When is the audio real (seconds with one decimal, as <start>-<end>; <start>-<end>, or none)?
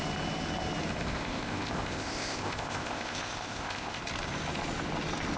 0.0-0.9; 4.0-5.4